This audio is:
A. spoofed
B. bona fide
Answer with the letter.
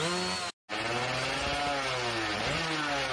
B